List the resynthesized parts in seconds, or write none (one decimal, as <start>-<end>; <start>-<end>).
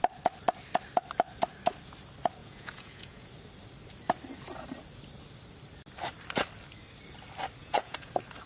2.4-3.3; 7.6-8.1